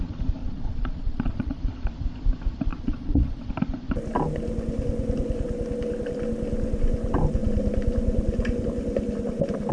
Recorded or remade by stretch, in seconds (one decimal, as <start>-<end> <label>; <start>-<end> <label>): 0.0-0.4 recorded; 0.4-1.6 remade; 1.6-2.7 recorded; 2.7-3.5 remade; 3.5-9.7 recorded